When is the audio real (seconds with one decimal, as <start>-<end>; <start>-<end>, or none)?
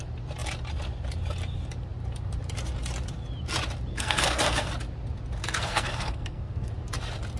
0.0-3.9; 4.7-5.4; 6.7-7.4